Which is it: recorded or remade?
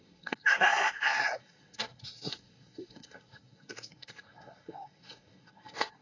remade